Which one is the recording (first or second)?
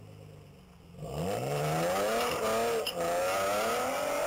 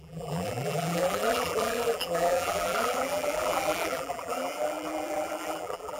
first